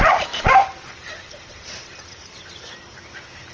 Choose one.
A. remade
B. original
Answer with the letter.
A